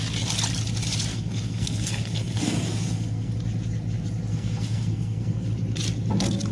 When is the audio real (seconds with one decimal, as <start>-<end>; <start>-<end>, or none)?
0.0-1.1; 3.3-4.3; 5.5-6.5